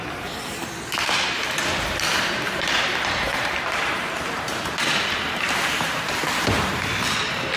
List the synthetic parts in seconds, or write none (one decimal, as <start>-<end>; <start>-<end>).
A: 2.1-6.0